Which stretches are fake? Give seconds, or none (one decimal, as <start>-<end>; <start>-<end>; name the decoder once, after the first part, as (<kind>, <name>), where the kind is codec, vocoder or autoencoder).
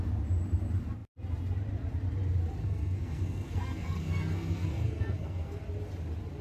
2.6-5.6 (codec, SNAC)